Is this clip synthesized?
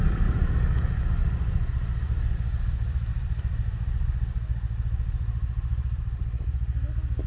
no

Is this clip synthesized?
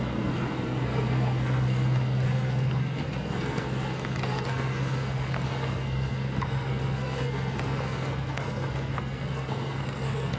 yes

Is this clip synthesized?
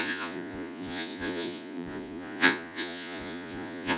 yes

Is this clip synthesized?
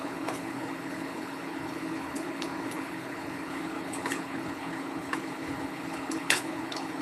yes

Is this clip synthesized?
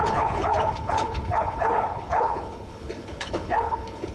yes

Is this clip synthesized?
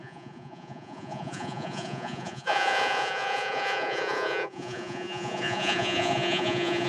yes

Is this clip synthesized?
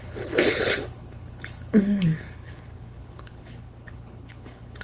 yes